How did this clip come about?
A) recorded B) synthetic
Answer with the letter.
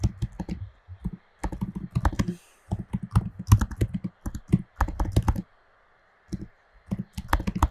A